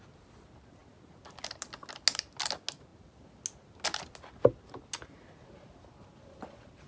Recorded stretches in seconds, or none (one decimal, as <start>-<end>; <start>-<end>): 0.0-6.9